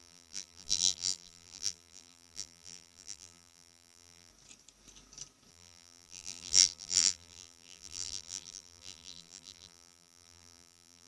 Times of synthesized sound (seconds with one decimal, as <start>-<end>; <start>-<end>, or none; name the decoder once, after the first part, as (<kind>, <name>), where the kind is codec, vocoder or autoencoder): 0.0-4.3 (vocoder, BigVGAN v2); 5.5-11.1